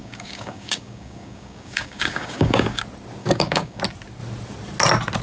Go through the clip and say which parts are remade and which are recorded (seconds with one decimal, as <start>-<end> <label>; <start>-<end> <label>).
0.0-2.8 remade; 2.8-3.2 recorded; 3.2-3.8 remade; 3.8-5.2 recorded